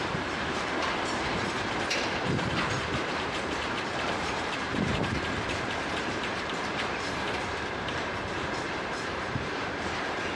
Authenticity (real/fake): fake